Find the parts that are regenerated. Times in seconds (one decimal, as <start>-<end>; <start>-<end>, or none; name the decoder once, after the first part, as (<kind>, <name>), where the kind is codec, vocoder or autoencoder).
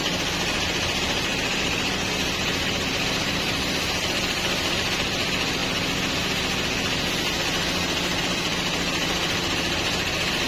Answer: 0.0-1.3 (vocoder, BigVGAN v2); 2.8-5.6; 8.2-10.5